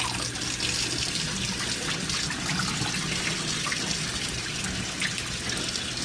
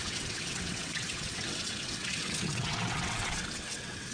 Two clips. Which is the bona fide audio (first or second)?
first